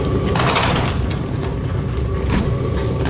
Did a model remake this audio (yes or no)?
no